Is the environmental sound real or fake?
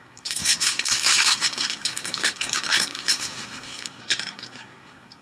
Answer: fake